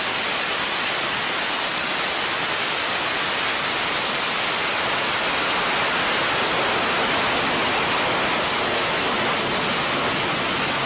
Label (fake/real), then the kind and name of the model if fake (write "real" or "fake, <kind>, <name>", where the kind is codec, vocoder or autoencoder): real